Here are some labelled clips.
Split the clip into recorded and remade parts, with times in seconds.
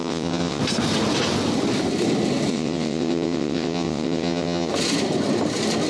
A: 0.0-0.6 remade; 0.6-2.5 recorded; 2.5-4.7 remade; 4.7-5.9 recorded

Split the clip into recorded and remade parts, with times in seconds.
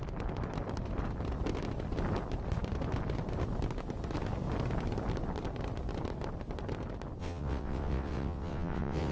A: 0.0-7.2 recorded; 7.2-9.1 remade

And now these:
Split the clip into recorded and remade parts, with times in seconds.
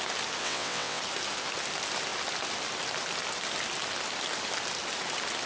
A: 0.0-0.4 recorded; 0.4-1.0 remade; 1.0-5.5 recorded